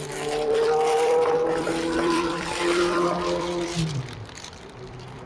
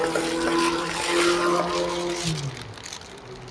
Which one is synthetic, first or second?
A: first